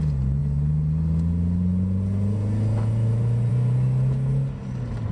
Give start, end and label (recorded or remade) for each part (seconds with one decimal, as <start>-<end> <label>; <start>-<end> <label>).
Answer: 0.0-5.1 recorded